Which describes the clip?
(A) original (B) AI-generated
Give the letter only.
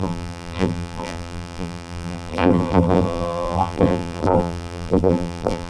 B